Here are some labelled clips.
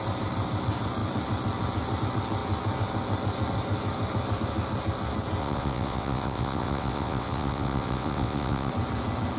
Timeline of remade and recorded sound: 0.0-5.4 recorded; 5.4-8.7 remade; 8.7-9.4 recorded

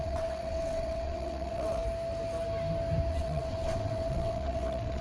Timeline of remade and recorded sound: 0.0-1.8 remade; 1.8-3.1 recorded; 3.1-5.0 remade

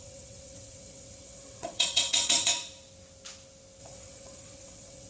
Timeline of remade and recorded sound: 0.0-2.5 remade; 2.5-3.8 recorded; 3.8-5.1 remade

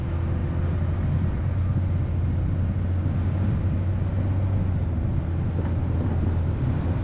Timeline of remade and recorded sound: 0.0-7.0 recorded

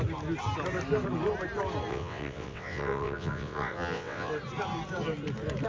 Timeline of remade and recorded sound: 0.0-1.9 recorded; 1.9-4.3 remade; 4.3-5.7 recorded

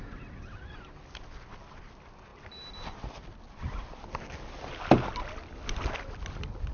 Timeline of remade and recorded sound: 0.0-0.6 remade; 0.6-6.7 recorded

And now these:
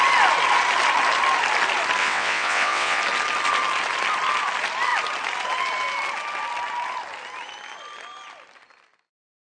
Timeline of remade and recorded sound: 0.0-2.0 recorded; 2.0-3.0 remade; 3.0-9.5 recorded